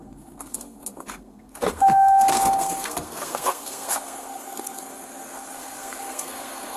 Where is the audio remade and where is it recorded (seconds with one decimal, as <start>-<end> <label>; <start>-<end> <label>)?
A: 0.0-6.8 remade